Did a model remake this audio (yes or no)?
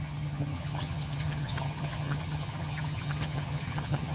yes